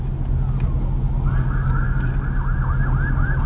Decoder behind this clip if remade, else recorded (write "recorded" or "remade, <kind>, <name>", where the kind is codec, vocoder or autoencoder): recorded